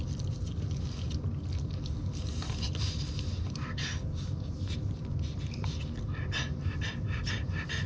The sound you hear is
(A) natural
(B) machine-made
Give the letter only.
A